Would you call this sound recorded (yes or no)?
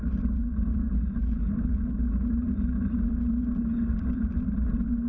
no